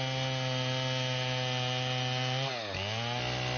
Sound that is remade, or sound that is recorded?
recorded